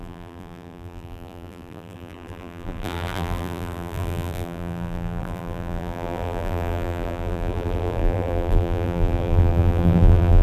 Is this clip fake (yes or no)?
yes